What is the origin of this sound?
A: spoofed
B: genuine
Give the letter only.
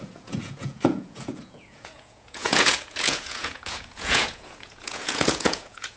A